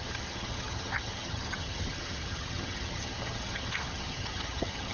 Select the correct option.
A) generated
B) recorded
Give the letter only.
A